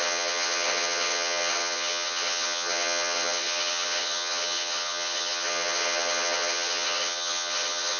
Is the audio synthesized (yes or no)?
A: yes